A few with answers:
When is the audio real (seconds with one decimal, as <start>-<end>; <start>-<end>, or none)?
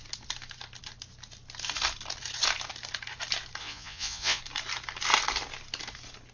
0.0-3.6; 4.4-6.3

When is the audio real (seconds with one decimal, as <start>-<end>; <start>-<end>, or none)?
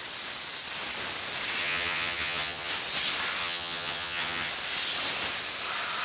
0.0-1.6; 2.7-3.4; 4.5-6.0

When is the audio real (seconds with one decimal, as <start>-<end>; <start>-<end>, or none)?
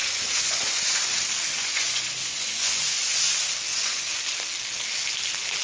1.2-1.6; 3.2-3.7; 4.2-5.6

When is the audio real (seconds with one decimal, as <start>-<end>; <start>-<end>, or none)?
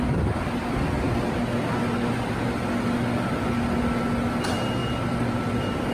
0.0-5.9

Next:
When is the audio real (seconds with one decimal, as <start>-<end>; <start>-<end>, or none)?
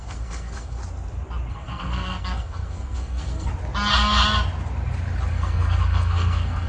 0.8-1.5; 3.5-5.3